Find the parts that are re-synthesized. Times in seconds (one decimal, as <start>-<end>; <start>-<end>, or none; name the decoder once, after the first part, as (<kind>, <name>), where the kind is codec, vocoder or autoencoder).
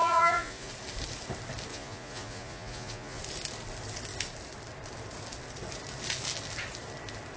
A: 0.0-0.7 (vocoder, Vocos); 1.7-3.2